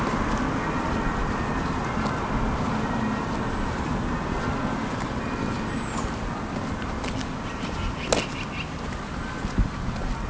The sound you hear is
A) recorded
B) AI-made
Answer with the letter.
A